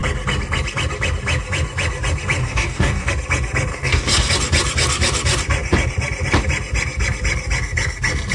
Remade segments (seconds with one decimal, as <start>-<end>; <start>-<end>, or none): 2.4-3.1; 3.7-4.3